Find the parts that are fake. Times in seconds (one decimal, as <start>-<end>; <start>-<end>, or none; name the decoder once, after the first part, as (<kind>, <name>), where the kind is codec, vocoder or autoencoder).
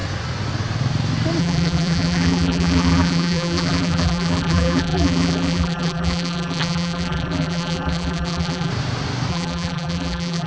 1.4-8.7 (vocoder, BigVGAN v2); 9.3-10.5